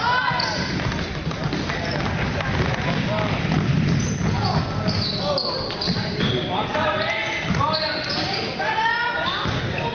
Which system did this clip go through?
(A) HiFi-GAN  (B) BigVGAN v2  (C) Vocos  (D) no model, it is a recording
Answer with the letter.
D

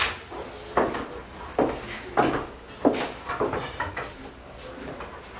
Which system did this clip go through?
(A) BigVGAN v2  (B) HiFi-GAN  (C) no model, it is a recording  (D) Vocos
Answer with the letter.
C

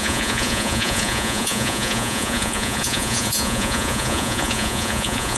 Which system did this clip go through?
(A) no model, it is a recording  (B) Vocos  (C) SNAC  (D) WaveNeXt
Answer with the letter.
B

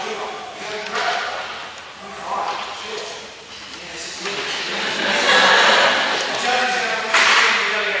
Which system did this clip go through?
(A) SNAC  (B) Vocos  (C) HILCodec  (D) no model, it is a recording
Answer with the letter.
D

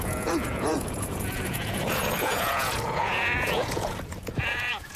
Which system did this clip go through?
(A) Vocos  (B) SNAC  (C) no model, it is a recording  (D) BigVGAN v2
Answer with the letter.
A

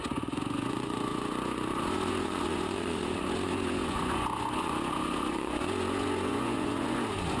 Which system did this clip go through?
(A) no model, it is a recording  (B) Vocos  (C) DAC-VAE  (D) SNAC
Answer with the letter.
B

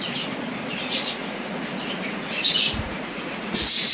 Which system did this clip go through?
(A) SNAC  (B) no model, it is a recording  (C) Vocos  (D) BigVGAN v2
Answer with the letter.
C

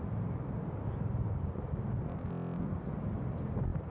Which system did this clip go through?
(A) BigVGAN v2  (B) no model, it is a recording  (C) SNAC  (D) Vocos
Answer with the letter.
B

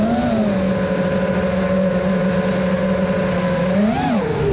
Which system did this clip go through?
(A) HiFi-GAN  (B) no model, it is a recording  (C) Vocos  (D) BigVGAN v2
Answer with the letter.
B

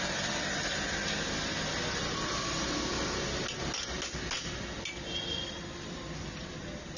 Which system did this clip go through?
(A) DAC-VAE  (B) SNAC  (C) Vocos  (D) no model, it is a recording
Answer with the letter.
D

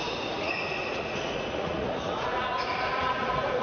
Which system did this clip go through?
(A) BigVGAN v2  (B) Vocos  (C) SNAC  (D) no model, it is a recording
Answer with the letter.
B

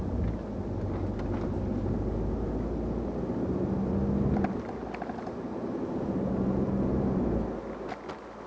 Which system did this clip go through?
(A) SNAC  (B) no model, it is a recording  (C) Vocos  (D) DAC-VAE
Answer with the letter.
B